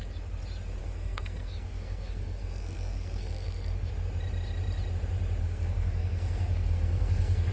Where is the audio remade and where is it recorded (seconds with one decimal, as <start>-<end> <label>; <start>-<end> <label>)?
0.0-0.8 recorded; 0.8-3.9 remade; 3.9-5.4 recorded; 5.4-7.5 remade